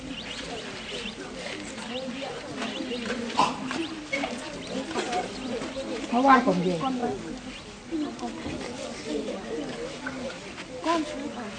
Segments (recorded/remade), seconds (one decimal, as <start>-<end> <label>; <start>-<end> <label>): 0.0-11.6 recorded